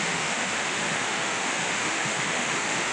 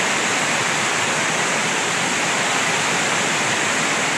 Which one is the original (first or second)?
second